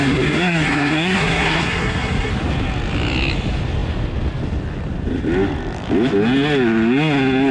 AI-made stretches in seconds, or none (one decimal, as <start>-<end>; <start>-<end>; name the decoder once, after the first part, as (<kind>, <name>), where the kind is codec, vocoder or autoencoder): 0.0-2.3 (codec, SNAC)